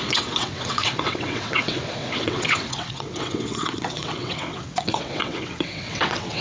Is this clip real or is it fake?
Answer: fake